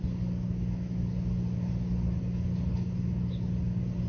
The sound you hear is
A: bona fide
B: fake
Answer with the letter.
A